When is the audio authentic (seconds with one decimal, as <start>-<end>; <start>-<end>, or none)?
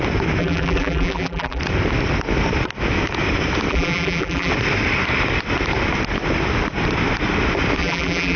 0.0-0.4; 1.6-3.7; 4.5-7.8